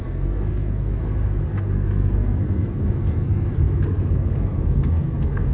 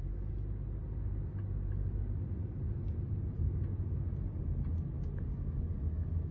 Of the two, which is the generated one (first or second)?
first